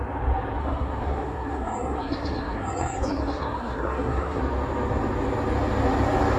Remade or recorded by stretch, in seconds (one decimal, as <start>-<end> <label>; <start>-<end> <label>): 0.0-0.6 recorded; 0.6-4.4 remade; 4.4-6.4 recorded